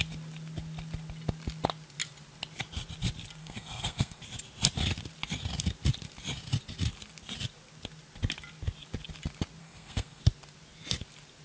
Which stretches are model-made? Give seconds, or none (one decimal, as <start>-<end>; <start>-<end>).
3.4-4.2; 9.6-10.2